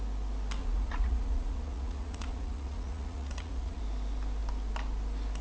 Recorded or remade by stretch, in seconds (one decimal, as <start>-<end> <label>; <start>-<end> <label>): 0.0-0.6 recorded; 0.6-3.8 remade; 3.8-5.4 recorded